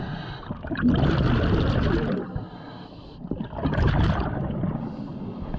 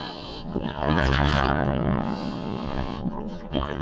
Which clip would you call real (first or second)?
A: first